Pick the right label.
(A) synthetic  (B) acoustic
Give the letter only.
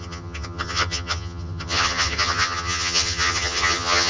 A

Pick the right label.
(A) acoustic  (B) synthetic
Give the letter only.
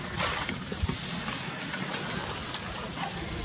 A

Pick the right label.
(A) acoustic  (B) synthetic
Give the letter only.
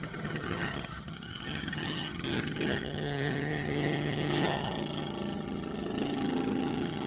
B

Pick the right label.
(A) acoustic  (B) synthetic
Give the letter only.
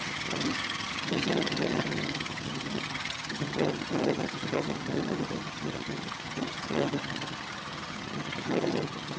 B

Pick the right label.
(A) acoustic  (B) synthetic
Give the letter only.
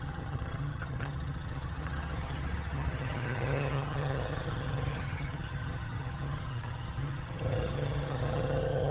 B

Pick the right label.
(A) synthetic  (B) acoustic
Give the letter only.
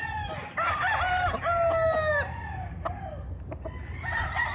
B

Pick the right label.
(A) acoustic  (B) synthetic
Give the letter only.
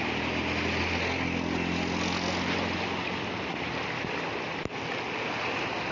A